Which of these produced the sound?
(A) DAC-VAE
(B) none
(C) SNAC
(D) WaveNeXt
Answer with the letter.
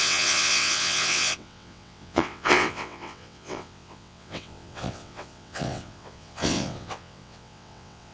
D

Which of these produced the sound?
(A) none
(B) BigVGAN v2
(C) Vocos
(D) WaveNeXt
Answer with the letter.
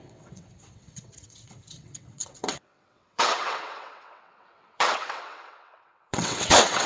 D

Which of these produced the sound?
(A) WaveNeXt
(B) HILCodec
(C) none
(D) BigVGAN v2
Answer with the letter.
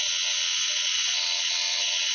A